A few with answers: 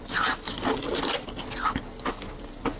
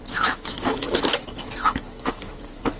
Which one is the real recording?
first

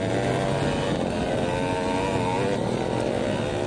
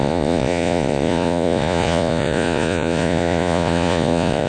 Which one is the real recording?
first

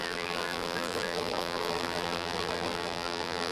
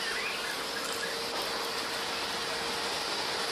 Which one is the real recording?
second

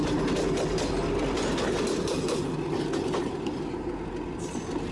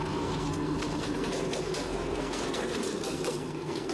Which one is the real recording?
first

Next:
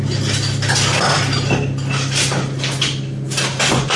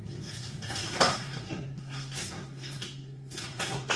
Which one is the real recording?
first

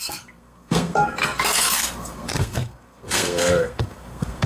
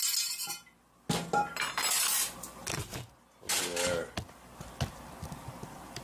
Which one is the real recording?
second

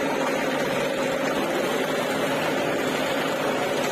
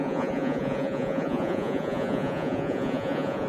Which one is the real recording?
first